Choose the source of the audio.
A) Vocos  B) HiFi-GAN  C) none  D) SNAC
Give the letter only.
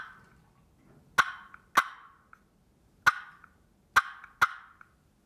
C